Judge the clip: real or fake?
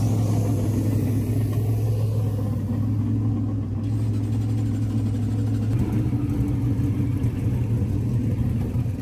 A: real